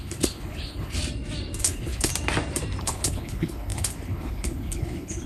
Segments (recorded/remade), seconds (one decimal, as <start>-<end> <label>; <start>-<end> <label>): 0.0-1.0 remade; 1.0-1.6 recorded; 1.6-2.1 remade; 2.1-2.8 recorded; 2.8-5.3 remade